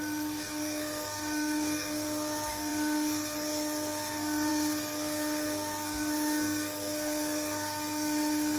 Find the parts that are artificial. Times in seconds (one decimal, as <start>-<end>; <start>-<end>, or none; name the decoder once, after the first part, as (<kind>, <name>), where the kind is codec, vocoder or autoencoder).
0.0-8.6 (codec, SNAC)